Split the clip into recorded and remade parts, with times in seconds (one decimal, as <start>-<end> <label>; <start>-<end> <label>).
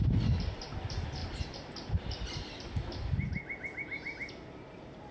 0.0-5.1 recorded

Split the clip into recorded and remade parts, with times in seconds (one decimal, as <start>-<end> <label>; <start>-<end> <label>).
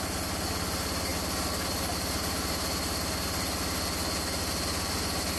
0.0-5.4 recorded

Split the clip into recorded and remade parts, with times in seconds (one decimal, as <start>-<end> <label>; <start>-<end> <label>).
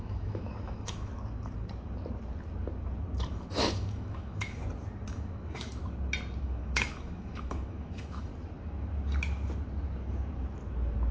0.0-1.1 remade; 1.1-3.3 recorded; 3.3-4.6 remade; 4.6-5.1 recorded; 5.1-5.8 remade; 5.8-6.4 recorded; 6.4-8.3 remade; 8.3-11.1 recorded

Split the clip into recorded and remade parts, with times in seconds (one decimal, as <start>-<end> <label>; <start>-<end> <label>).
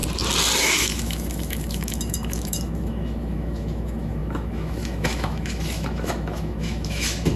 0.0-0.6 recorded; 0.6-7.4 remade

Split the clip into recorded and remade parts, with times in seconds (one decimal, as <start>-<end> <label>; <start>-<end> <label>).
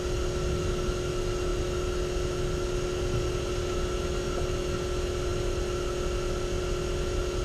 0.0-7.4 recorded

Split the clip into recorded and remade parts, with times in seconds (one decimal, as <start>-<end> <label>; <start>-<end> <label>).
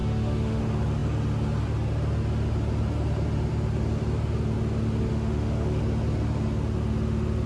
0.0-0.6 remade; 0.6-5.1 recorded; 5.1-5.8 remade; 5.8-7.5 recorded